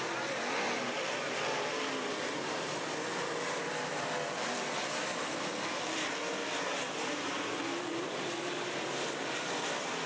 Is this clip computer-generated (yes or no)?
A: no